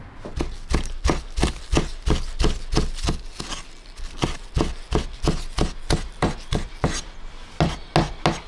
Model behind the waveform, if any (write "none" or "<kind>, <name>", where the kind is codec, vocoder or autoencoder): none